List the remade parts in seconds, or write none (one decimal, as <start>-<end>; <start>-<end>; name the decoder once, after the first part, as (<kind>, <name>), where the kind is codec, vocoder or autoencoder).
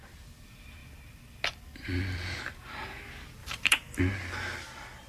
3.4-4.0 (vocoder, BigVGAN v2)